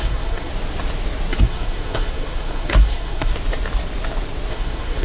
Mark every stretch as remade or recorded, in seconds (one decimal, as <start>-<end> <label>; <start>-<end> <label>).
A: 0.0-0.5 remade; 0.5-1.4 recorded; 1.4-3.3 remade; 3.3-4.5 recorded; 4.5-5.0 remade